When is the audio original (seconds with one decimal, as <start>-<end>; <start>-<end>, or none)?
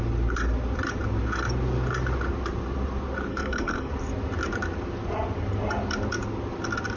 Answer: 0.0-3.3; 3.9-7.0